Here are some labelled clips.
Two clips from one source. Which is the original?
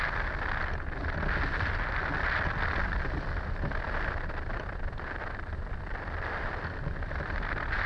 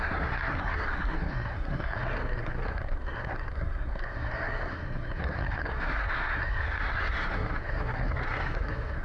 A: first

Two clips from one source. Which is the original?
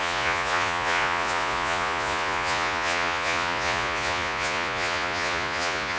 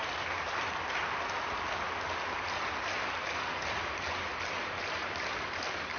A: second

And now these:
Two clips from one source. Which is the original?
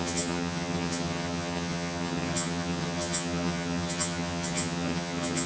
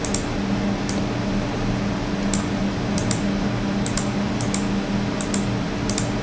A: second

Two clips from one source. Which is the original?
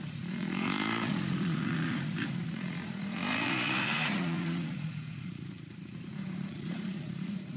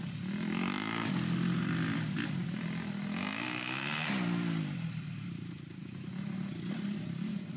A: second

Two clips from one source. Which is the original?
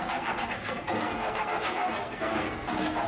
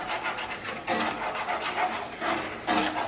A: second